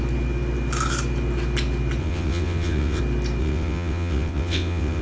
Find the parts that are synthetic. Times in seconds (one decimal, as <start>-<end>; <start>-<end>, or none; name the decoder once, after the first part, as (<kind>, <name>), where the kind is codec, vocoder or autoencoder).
2.0-3.0 (vocoder, WaveNeXt); 3.4-5.0